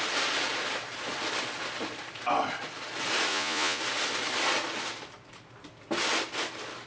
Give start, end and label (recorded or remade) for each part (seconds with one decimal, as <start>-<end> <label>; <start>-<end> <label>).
0.0-3.3 recorded; 3.3-3.8 remade; 3.8-6.9 recorded